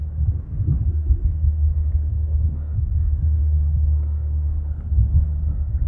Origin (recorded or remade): remade